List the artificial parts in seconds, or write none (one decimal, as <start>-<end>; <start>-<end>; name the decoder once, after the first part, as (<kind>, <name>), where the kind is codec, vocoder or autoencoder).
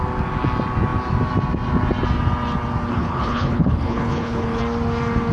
2.9-4.6 (codec, HILCodec)